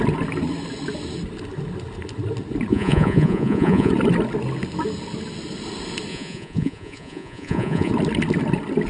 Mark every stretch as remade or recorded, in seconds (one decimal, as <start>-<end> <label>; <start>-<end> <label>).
0.0-2.7 recorded; 2.7-3.9 remade; 3.9-6.1 recorded; 6.1-7.9 remade; 7.9-8.9 recorded